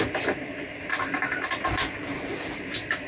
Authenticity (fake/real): real